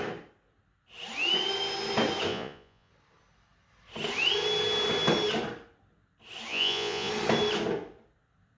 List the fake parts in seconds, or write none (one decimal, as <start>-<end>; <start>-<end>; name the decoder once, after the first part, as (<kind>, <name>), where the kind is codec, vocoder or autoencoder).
2.3-2.9 (vocoder, Vocos); 6.5-7.1